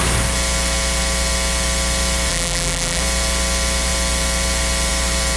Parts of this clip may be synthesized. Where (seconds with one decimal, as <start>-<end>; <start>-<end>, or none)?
2.3-3.0

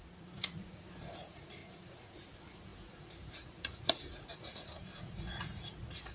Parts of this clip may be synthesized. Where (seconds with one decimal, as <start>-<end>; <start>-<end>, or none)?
0.0-6.1

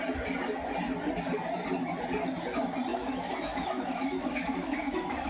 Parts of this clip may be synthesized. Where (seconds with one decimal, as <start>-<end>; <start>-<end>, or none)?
2.9-5.3